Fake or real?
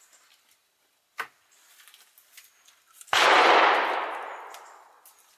real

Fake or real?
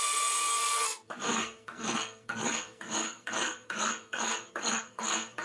fake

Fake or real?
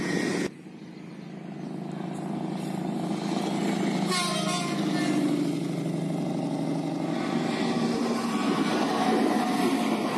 real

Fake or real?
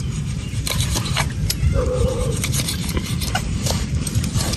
fake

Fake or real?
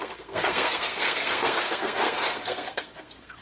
fake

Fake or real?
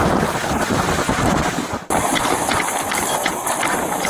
fake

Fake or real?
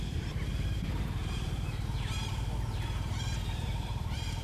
fake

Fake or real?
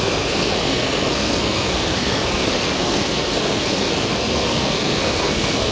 fake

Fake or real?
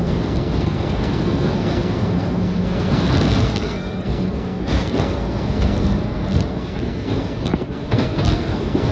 fake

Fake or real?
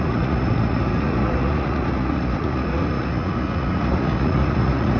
fake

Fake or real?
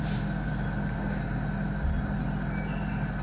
real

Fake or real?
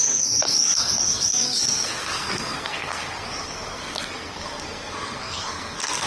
fake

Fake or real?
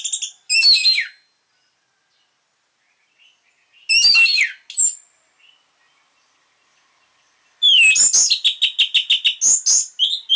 real